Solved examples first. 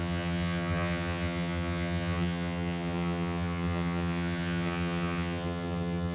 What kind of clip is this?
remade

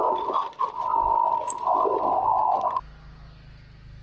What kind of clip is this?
recorded